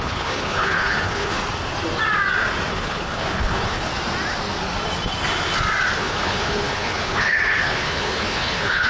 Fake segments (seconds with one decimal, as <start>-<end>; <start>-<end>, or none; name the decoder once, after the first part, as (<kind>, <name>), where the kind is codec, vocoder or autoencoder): 0.0-1.4 (codec, HILCodec); 2.7-3.9; 6.0-8.9